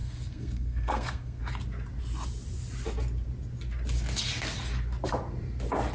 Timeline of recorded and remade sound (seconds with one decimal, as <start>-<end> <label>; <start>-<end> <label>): 0.0-1.4 remade; 1.4-5.9 recorded